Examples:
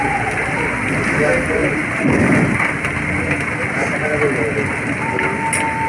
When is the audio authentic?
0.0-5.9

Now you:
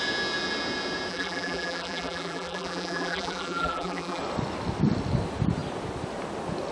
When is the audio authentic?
0.0-1.1; 4.2-6.7

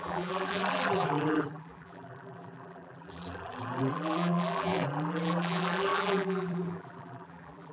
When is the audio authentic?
none